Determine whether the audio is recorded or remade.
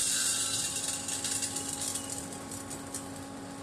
recorded